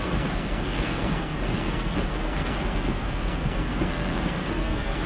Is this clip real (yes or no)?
no